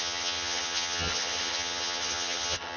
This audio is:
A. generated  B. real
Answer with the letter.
A